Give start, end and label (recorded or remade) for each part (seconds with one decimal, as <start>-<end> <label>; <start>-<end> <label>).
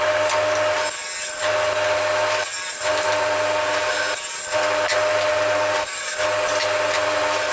0.0-7.5 recorded